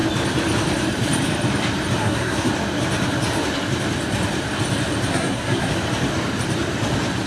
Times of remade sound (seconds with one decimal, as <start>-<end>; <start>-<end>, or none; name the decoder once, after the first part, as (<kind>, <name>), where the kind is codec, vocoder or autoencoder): 2.0-2.5 (codec, SNAC); 5.1-5.7